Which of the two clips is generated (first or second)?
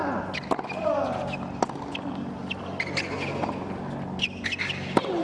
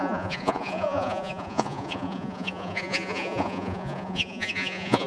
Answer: second